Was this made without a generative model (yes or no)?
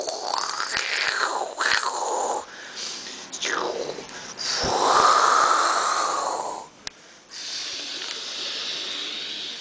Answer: yes